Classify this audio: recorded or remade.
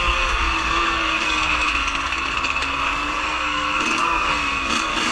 remade